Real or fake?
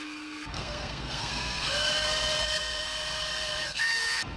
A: fake